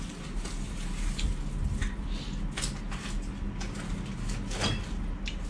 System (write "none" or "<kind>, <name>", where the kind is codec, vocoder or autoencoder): none